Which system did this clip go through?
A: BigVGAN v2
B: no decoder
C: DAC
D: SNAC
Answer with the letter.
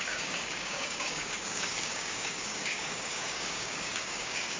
C